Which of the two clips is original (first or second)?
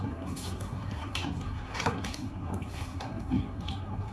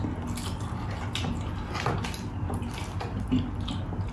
second